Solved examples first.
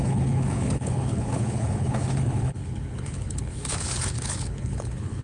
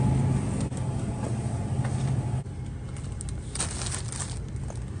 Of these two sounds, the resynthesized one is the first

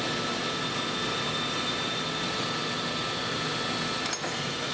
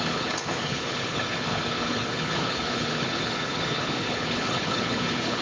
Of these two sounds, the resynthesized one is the second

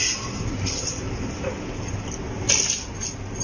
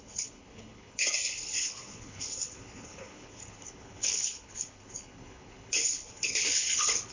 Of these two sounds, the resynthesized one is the second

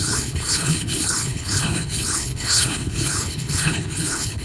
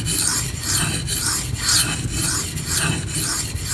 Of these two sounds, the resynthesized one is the first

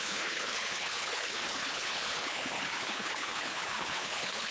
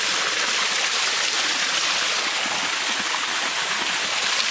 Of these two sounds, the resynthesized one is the first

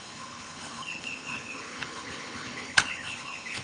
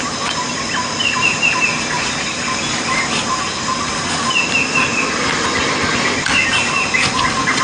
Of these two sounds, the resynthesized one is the first